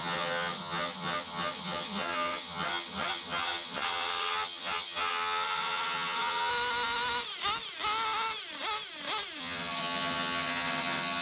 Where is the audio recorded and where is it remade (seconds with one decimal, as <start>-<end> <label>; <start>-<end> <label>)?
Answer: 0.0-6.5 remade; 6.5-9.4 recorded; 9.4-11.2 remade